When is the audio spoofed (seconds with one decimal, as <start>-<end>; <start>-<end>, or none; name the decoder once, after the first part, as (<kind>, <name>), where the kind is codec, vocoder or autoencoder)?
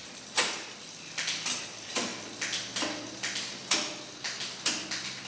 0.0-2.1 (vocoder, BigVGAN v2)